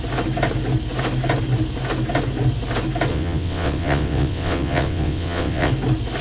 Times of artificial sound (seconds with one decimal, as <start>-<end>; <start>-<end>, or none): 3.1-5.7